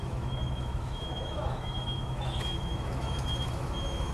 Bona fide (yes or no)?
no